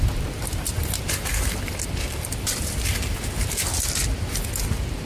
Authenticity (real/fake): real